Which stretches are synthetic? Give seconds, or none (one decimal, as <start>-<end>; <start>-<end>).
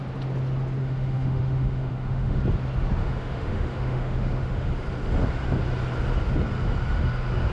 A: 0.8-2.4; 3.0-4.7